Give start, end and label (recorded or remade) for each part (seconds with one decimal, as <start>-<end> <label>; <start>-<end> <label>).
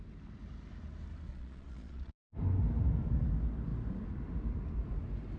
0.0-1.3 recorded; 1.3-2.1 remade; 2.1-5.4 recorded